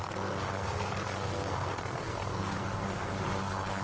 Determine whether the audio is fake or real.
fake